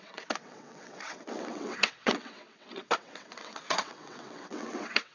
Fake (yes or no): yes